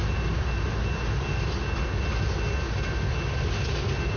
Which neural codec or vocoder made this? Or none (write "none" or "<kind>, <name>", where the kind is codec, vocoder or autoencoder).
none